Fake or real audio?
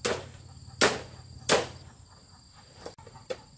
real